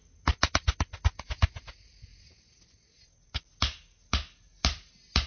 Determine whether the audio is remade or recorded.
recorded